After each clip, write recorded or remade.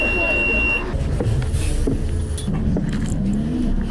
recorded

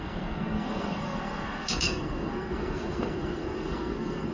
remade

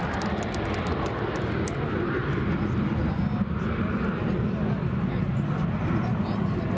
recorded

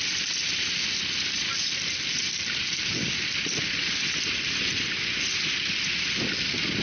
recorded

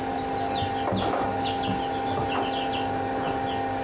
recorded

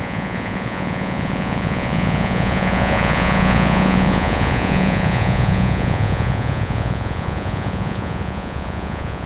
remade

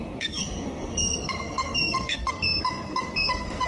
remade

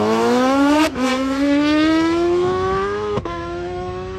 remade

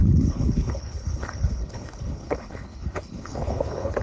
remade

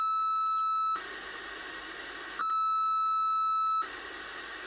recorded